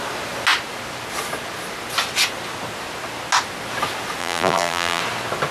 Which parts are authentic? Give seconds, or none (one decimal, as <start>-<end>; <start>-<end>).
0.0-4.2; 5.0-5.5